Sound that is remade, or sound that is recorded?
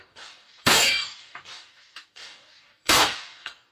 remade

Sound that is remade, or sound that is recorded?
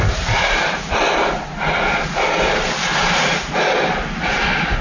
recorded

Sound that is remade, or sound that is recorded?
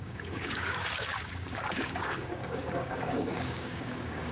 remade